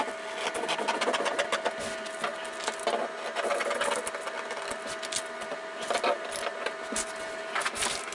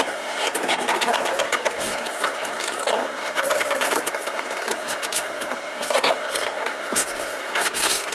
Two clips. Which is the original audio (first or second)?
first